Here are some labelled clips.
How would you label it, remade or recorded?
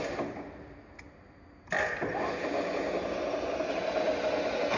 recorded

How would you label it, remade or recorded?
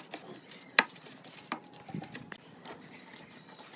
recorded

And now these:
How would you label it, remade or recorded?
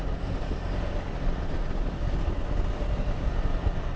recorded